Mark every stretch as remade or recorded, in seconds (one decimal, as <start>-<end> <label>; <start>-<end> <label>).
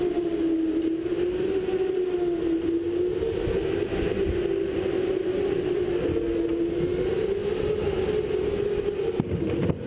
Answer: 0.0-9.9 recorded